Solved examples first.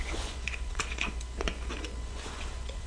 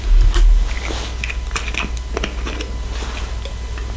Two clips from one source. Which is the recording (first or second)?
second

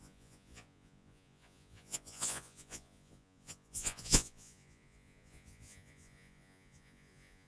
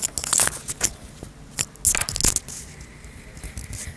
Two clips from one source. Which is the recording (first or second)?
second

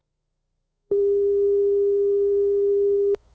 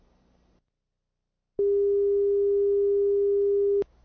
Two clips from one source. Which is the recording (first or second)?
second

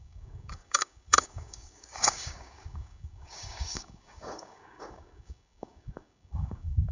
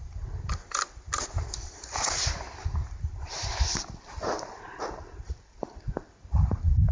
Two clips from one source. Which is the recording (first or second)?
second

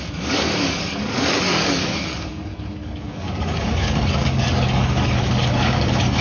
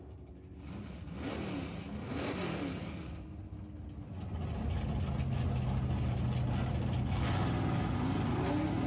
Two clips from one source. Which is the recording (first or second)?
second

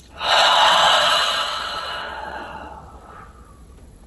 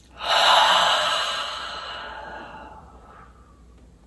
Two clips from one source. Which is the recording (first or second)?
second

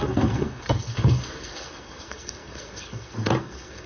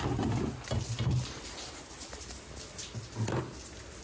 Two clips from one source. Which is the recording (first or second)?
second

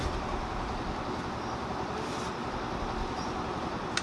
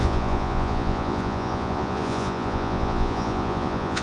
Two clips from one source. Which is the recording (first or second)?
first